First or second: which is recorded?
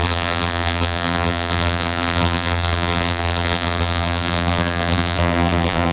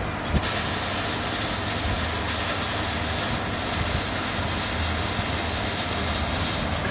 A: second